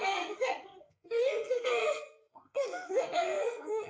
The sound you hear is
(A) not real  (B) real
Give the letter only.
A